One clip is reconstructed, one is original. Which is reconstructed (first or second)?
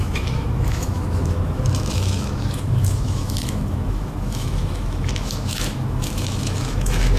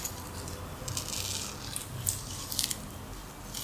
first